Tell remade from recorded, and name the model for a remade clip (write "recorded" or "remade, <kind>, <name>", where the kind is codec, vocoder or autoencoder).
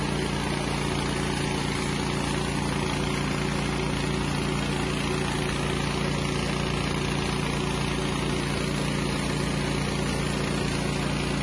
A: recorded